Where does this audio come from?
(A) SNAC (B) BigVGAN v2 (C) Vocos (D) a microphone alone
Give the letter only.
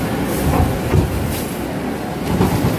D